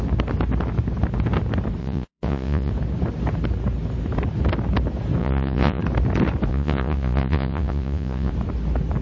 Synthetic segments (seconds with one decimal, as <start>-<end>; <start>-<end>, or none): 1.8-2.7; 5.2-5.8; 6.5-8.3